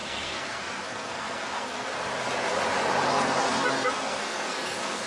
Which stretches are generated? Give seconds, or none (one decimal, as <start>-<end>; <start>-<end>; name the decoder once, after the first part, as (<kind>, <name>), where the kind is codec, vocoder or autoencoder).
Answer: 0.0-2.1 (codec, SNAC); 3.1-5.1